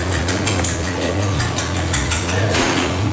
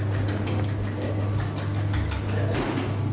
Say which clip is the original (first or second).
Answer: second